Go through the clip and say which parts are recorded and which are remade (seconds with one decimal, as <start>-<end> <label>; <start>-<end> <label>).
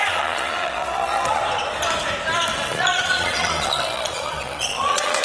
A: 0.0-1.4 remade; 1.4-2.5 recorded; 2.5-5.2 remade